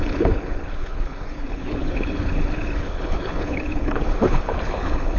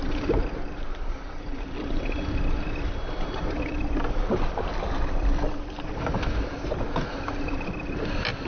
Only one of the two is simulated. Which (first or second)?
first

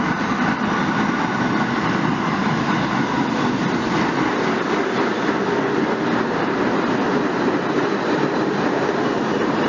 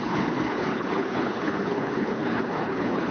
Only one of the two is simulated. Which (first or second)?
second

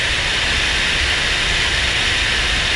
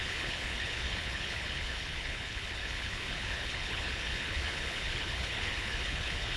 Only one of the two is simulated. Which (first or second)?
second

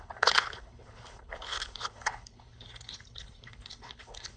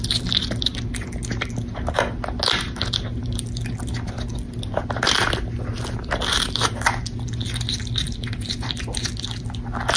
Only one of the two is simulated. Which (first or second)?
first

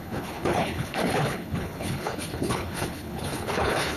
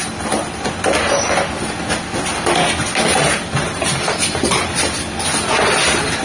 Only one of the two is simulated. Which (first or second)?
first